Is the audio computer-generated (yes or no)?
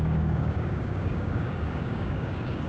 yes